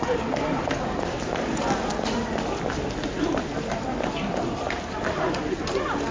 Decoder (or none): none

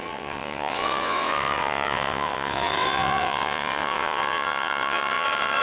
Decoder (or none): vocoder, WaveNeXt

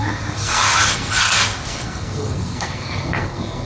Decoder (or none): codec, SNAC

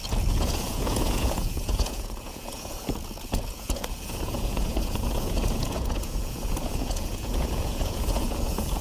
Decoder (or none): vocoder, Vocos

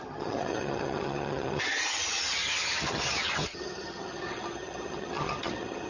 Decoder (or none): vocoder, HiFi-GAN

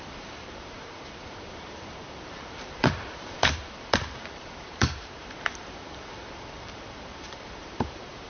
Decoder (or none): vocoder, BigVGAN v2